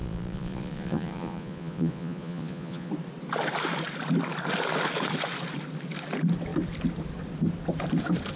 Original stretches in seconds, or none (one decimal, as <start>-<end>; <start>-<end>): 2.9-8.4